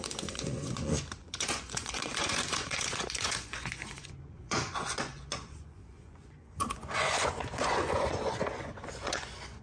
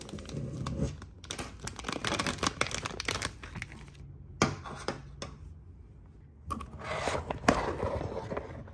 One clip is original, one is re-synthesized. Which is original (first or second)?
second